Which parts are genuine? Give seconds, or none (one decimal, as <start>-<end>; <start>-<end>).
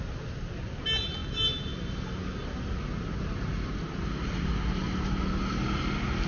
0.0-6.3